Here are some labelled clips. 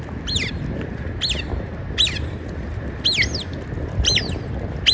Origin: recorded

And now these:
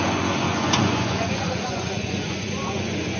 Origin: remade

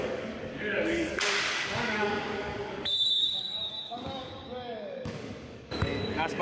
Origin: remade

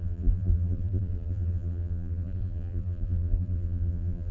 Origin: remade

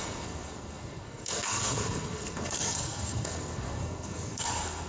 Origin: remade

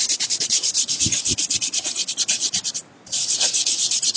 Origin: remade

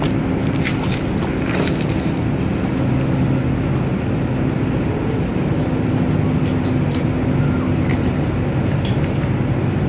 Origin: recorded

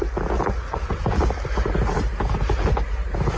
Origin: recorded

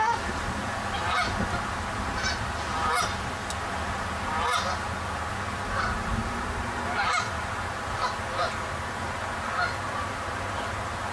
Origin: recorded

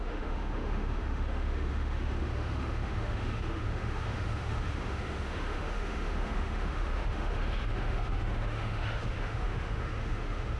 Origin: remade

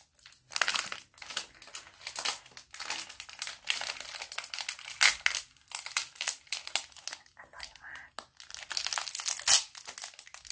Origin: recorded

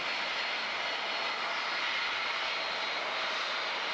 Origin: recorded